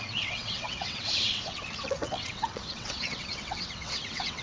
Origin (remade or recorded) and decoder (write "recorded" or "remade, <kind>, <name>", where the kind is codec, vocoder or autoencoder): remade, vocoder, WaveNeXt